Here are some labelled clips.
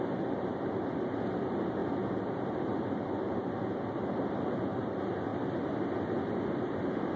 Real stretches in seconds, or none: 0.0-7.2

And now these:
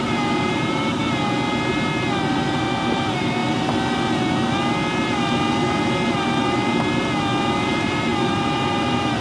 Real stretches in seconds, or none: 1.0-2.3; 3.4-7.6

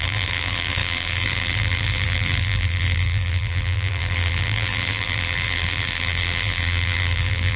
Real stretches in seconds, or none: none

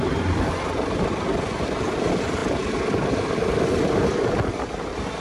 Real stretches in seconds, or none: 0.0-5.2

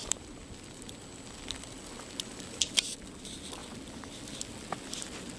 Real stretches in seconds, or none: 0.0-5.4